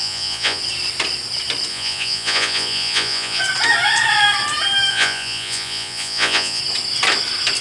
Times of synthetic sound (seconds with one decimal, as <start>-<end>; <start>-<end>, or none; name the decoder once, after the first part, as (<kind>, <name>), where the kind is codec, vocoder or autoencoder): 0.0-0.6 (vocoder, Vocos); 1.7-3.4; 4.9-6.6